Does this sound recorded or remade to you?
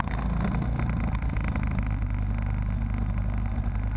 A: recorded